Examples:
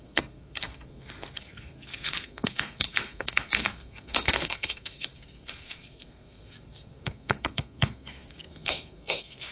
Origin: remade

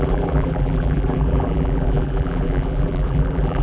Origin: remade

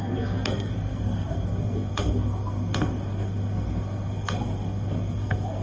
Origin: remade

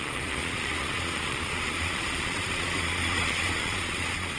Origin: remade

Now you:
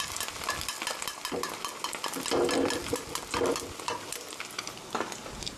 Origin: recorded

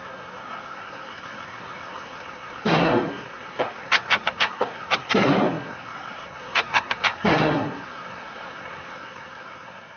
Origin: remade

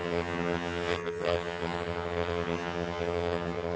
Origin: remade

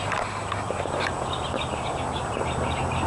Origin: remade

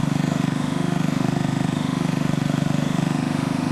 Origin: remade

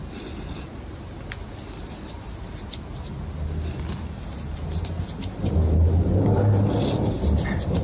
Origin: recorded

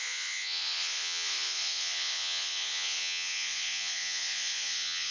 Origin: remade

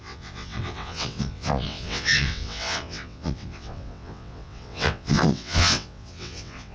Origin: remade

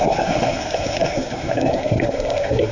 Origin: remade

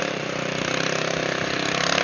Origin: remade